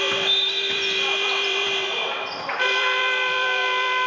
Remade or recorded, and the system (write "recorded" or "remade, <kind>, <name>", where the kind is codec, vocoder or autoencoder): remade, vocoder, BigVGAN v2